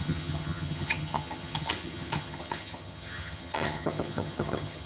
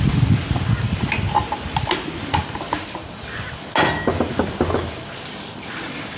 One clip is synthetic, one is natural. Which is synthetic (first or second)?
first